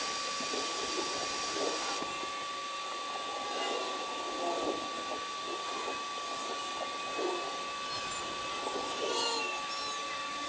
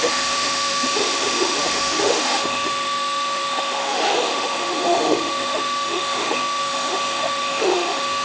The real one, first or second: first